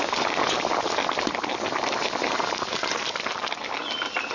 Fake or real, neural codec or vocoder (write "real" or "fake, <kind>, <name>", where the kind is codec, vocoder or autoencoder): real